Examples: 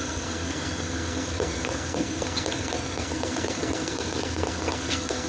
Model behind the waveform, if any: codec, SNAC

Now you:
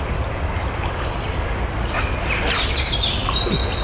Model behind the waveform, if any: none